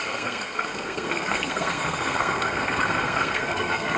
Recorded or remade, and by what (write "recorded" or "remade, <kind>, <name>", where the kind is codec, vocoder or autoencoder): remade, codec, SNAC